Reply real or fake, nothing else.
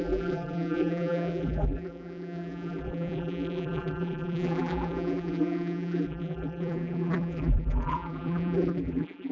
fake